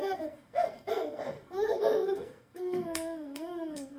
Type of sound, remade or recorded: remade